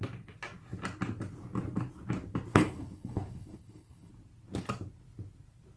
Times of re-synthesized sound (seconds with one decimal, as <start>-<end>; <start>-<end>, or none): 2.5-4.1